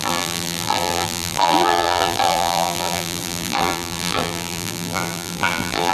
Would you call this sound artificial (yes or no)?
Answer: yes